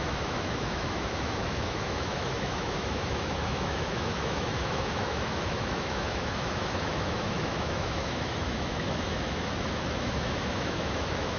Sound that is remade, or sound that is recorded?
remade